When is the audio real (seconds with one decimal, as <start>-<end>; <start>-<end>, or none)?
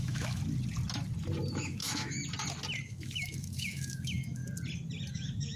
0.4-1.5; 2.2-2.8; 4.4-5.1